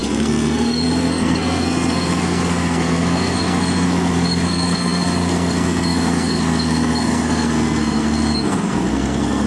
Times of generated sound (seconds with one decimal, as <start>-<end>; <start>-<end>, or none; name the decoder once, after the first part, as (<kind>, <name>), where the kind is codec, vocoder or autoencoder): 0.0-9.5 (codec, SNAC)